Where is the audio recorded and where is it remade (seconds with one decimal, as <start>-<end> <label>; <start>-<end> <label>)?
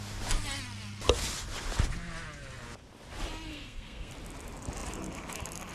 0.0-3.5 recorded; 3.5-4.1 remade; 4.1-5.7 recorded